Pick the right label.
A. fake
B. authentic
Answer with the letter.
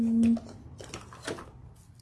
B